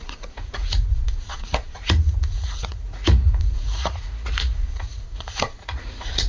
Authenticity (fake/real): fake